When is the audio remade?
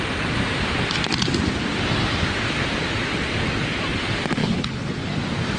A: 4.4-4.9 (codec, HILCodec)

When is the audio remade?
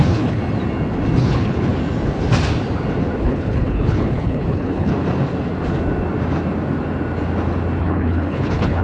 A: 0.0-0.4 (codec, HILCodec); 1.2-1.7; 3.2-4.9; 7.8-8.8